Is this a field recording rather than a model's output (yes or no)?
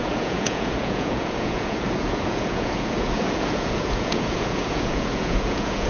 no